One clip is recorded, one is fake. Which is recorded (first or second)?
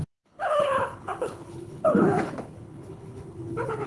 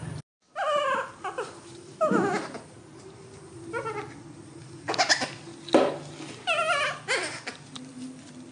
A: second